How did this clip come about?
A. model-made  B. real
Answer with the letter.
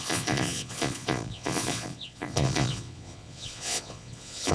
A